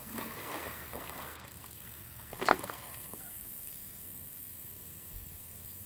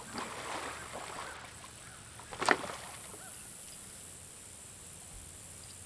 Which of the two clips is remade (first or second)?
first